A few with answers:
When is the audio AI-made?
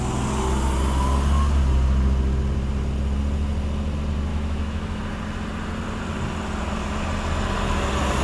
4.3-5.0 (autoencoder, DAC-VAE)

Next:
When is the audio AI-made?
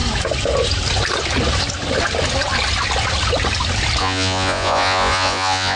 4.0-5.8 (vocoder, Vocos)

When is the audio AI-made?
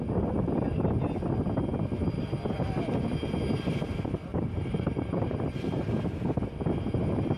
4.3-6.0 (vocoder, BigVGAN v2)